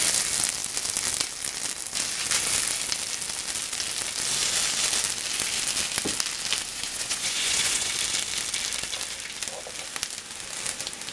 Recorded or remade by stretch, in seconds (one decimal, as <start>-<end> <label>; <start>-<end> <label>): 0.0-6.7 recorded; 6.7-7.9 remade; 7.9-11.1 recorded

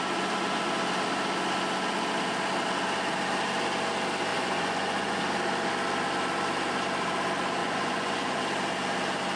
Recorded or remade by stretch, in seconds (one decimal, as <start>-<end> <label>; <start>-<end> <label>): 0.0-4.3 recorded; 4.3-5.2 remade; 5.2-7.6 recorded; 7.6-8.4 remade; 8.4-9.4 recorded

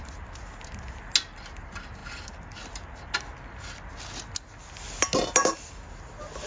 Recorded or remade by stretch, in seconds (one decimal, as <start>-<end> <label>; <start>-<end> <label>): 0.0-6.5 recorded

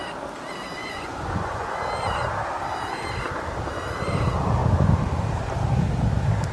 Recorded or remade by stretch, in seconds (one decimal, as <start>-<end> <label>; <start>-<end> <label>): 0.0-0.8 recorded; 0.8-1.8 remade; 1.8-6.5 recorded

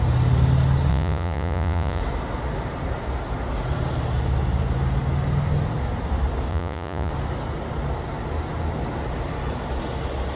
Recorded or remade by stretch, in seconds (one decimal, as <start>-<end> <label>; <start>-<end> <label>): 0.0-0.9 recorded; 0.9-2.0 remade; 2.0-6.5 recorded; 6.5-7.1 remade; 7.1-10.4 recorded